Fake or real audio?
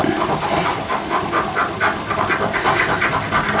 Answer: real